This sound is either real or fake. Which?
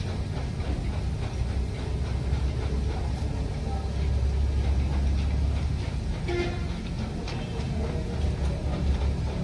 real